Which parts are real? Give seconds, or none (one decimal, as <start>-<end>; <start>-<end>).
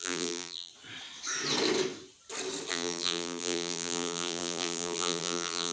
0.7-2.7